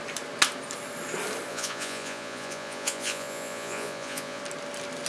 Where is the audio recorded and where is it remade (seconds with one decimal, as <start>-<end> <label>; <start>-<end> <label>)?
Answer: 0.0-1.5 recorded; 1.5-4.4 remade; 4.4-5.1 recorded